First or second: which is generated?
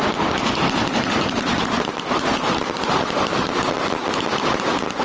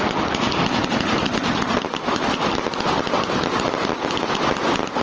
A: first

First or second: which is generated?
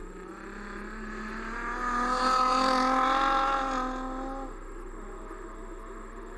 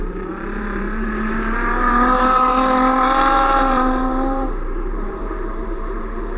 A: second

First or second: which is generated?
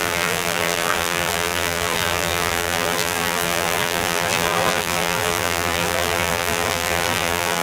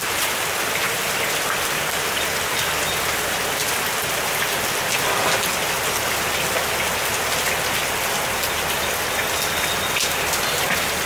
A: first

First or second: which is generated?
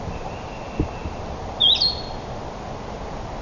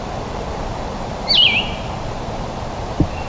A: second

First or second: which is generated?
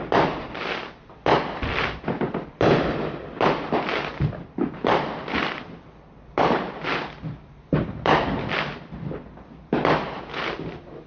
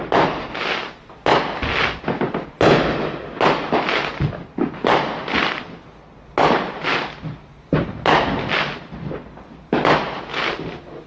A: first